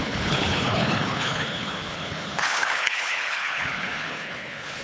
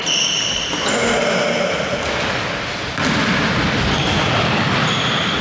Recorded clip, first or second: second